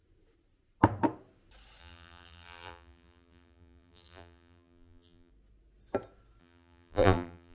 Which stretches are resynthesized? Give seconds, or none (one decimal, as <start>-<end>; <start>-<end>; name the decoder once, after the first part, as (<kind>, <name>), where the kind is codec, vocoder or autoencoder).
1.8-5.3 (vocoder, BigVGAN v2); 6.4-7.5